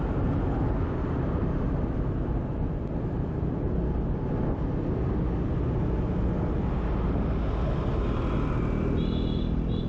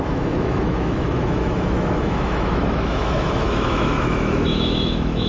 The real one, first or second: first